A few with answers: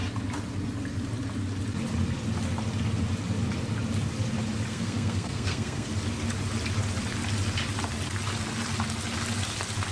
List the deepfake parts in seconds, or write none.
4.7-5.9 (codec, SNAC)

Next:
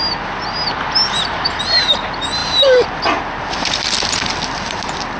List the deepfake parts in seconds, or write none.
none